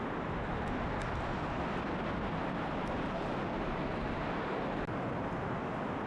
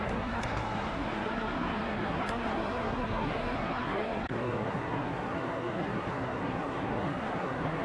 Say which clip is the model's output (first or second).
second